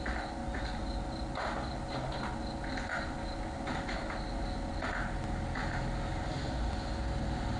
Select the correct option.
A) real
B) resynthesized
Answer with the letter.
A